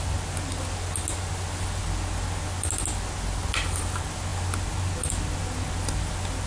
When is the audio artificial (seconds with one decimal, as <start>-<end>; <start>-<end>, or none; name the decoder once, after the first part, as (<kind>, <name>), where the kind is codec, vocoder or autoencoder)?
none